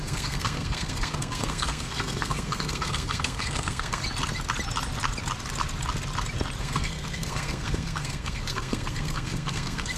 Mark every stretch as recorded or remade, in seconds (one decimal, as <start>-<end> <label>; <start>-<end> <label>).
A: 0.0-4.0 remade; 4.0-6.6 recorded; 6.6-10.0 remade